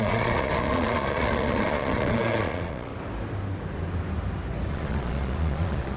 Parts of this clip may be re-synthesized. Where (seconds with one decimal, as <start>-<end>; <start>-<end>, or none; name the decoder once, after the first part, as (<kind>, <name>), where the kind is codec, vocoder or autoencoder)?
0.0-2.9 (vocoder, Vocos); 4.7-6.0